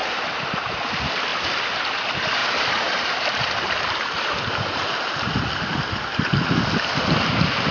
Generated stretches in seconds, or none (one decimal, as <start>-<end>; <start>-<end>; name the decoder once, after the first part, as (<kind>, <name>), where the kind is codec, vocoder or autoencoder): 0.0-0.8 (vocoder, BigVGAN v2); 2.4-6.2